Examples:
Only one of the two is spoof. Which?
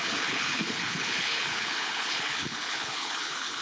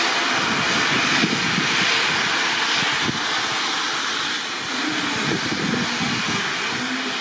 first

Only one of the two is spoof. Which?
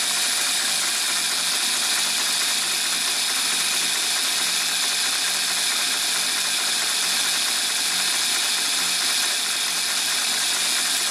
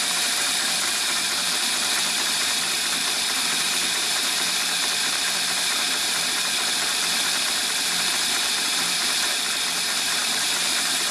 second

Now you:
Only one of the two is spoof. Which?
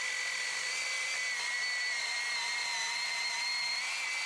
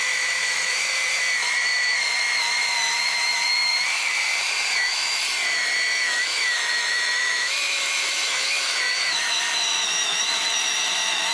second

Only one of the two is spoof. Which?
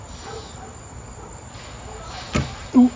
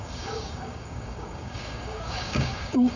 second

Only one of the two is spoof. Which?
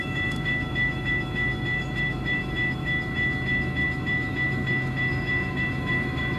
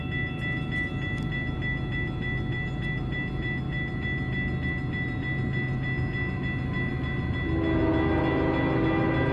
first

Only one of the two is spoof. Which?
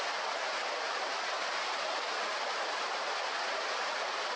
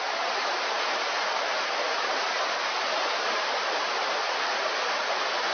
first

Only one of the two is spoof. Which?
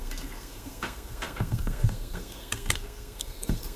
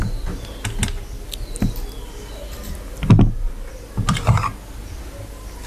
first